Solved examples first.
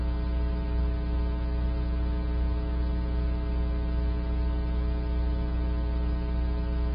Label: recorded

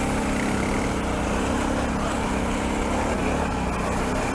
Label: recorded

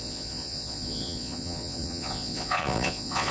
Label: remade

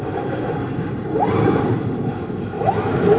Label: recorded